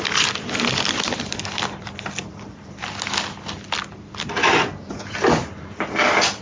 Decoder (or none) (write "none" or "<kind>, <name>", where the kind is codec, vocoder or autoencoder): none